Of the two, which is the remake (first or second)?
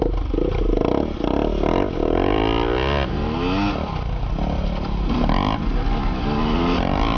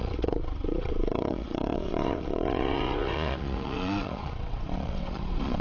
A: second